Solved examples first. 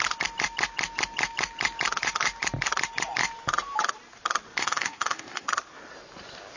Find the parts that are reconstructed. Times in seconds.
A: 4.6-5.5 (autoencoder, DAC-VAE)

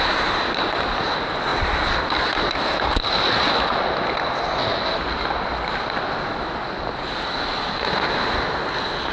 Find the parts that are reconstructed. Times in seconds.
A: none

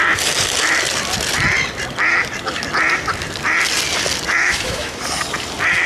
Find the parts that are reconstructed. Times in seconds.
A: 4.4-5.0 (autoencoder, DAC-VAE)

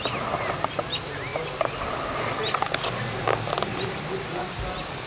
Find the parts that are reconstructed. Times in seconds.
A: none

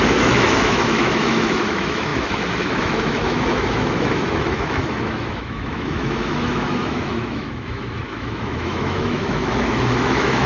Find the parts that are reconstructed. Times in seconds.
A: 0.0-10.5 (autoencoder, DAC-VAE)

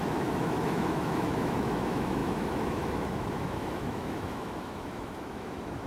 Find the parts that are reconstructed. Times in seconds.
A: 0.0-5.9 (autoencoder, DAC-VAE)

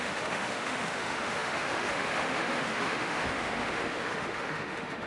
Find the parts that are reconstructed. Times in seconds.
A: 0.0-5.1 (autoencoder, DAC-VAE)